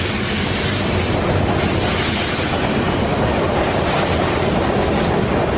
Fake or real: real